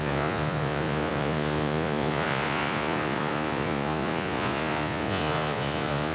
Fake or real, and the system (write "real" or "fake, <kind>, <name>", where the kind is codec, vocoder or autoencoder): fake, vocoder, Vocos